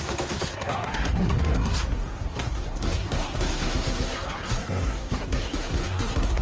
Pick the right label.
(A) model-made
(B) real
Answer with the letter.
A